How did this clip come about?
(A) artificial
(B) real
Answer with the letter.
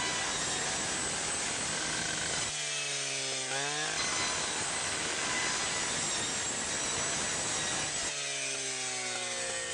B